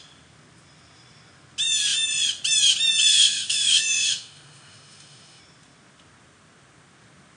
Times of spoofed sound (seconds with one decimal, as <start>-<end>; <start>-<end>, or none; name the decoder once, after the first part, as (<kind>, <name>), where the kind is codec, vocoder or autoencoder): 3.1-5.4 (autoencoder, DAC-VAE)